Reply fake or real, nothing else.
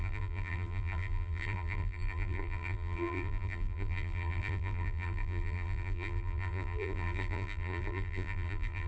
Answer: fake